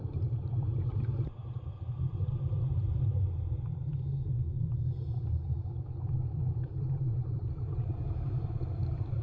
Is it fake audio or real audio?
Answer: fake